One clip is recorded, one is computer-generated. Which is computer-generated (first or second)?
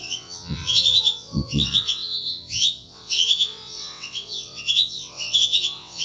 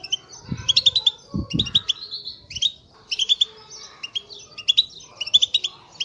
first